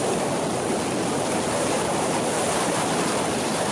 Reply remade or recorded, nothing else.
recorded